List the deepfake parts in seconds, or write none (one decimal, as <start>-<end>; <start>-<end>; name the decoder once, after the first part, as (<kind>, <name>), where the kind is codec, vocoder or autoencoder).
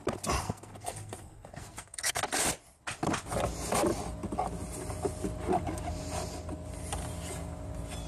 0.4-2.2 (codec, SNAC)